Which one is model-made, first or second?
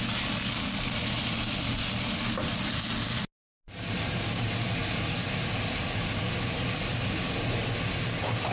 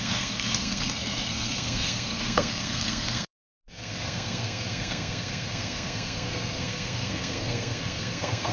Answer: second